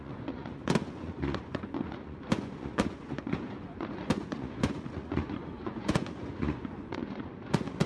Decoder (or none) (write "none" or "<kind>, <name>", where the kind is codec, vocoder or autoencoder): vocoder, Vocos